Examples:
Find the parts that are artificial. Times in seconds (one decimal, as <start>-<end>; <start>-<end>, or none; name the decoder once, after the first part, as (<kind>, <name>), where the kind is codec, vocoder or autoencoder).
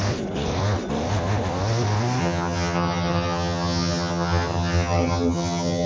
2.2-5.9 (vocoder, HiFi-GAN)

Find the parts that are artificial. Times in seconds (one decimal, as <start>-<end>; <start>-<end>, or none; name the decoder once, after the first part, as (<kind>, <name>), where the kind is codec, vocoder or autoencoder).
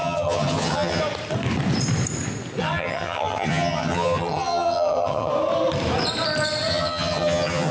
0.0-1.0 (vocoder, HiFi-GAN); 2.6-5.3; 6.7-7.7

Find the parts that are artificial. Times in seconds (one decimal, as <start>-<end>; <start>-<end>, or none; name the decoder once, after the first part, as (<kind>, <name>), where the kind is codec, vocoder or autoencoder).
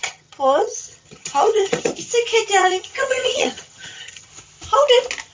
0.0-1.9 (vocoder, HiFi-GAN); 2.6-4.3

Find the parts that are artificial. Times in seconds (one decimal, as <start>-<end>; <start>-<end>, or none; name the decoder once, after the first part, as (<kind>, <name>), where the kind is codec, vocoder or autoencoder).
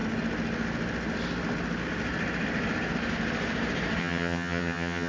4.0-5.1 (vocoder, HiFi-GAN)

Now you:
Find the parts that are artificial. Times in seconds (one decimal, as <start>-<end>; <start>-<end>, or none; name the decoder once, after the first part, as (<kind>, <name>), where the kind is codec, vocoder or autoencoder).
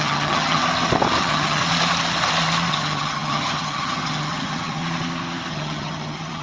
0.0-0.6 (vocoder, HiFi-GAN); 1.2-1.6; 2.7-4.8; 5.5-6.4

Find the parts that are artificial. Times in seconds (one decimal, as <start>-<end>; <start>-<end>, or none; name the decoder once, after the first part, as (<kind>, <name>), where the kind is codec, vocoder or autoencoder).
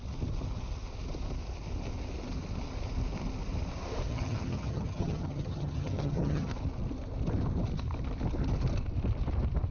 4.1-6.5 (vocoder, HiFi-GAN)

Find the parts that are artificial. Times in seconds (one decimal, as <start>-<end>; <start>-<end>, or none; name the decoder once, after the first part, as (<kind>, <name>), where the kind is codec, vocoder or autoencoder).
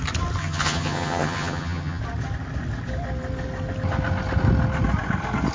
0.4-2.0 (vocoder, HiFi-GAN)